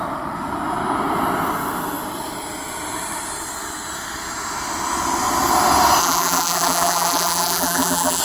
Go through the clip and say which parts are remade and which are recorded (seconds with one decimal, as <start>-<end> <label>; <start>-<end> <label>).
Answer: 0.0-6.0 recorded; 6.0-8.2 remade